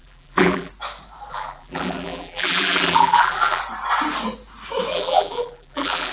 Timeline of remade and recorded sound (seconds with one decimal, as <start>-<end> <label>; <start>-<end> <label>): 0.0-0.7 remade; 0.7-1.3 recorded; 1.3-3.6 remade; 3.6-4.9 recorded; 4.9-6.1 remade